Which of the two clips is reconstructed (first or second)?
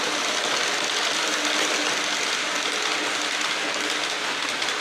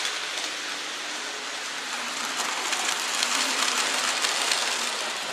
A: second